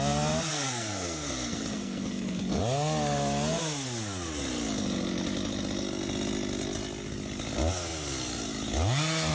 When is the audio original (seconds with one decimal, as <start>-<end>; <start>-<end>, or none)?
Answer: 0.0-0.5; 2.6-9.3